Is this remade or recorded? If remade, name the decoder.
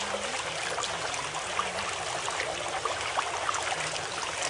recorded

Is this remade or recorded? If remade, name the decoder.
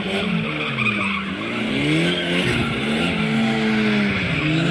recorded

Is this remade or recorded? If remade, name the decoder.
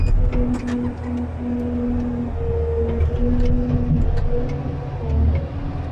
recorded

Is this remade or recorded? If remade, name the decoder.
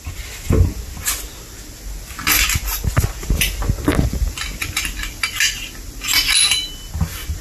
recorded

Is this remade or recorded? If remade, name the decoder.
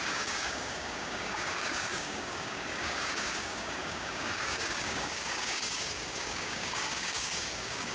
remade, codec, DAC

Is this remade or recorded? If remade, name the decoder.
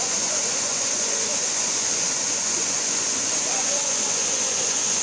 remade, vocoder, Vocos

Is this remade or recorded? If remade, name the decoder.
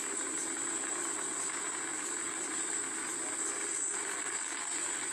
recorded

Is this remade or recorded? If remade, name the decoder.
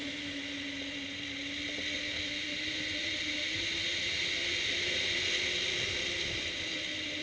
recorded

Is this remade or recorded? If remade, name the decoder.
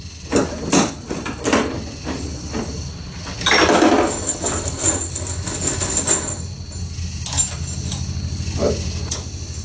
recorded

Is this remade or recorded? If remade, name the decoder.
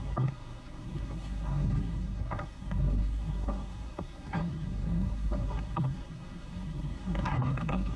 remade, codec, SNAC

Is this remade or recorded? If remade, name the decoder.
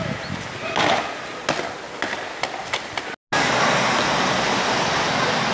recorded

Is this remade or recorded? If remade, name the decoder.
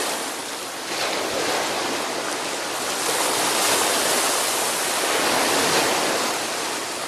recorded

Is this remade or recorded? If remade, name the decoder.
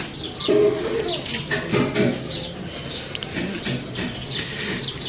recorded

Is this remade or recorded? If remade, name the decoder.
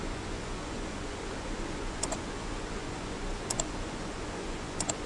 remade, vocoder, Vocos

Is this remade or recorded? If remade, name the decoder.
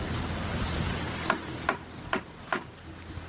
recorded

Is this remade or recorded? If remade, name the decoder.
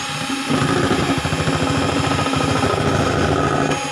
recorded